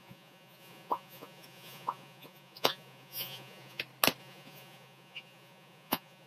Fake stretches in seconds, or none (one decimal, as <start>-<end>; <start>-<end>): 0.0-3.8; 4.2-6.3